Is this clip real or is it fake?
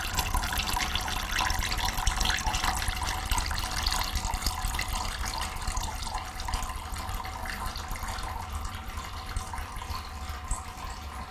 real